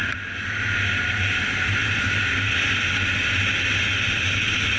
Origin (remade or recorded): recorded